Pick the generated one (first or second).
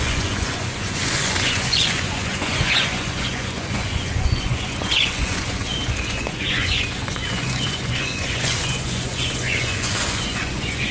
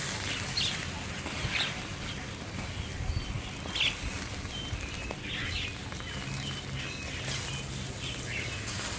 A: first